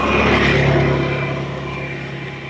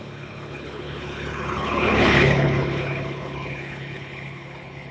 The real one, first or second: first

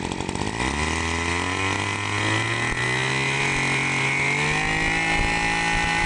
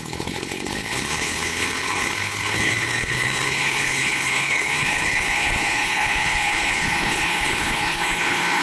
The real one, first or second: first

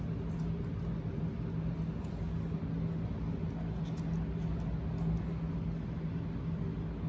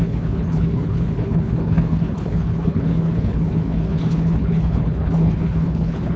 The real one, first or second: first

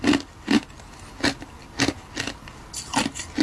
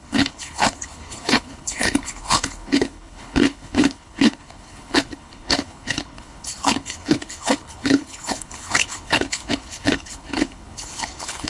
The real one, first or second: first